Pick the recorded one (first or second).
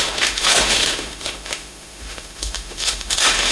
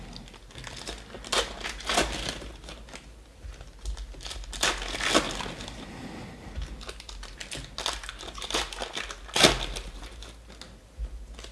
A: second